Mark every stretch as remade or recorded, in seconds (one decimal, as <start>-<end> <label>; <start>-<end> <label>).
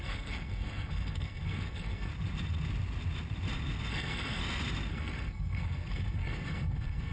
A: 0.0-2.1 remade; 2.1-3.9 recorded; 3.9-4.4 remade; 4.4-4.9 recorded; 4.9-7.1 remade